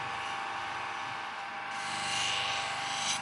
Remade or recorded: recorded